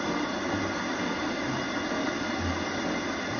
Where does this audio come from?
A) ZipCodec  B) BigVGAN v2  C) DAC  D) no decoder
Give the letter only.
D